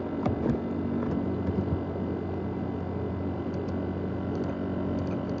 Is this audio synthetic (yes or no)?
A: no